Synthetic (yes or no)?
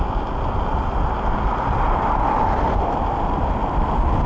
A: no